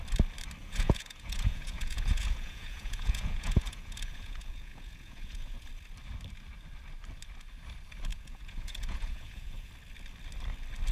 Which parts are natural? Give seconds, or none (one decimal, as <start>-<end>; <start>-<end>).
0.0-0.6; 5.7-8.1; 9.7-10.9